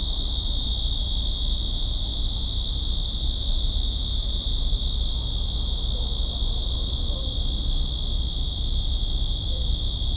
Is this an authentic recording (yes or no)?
yes